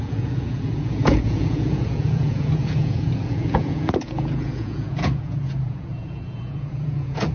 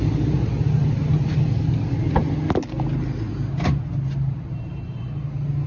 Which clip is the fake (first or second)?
first